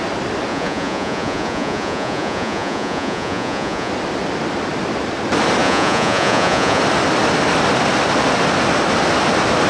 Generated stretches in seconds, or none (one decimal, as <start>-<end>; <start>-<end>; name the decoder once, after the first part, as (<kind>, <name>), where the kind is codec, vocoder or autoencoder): 0.5-3.9 (vocoder, Vocos); 5.6-6.8